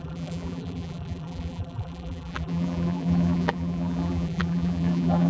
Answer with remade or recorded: remade